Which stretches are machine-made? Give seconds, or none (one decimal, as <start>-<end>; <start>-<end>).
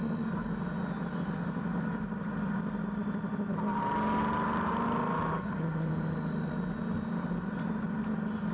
none